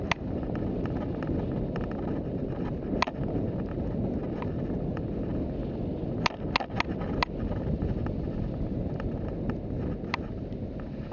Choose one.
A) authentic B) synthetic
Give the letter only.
A